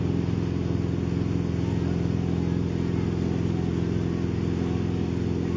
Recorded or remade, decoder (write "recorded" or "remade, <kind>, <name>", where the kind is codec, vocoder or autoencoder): recorded